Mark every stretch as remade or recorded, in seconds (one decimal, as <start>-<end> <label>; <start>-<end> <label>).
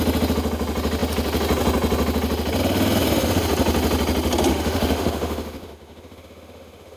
0.0-4.5 recorded; 4.5-7.0 remade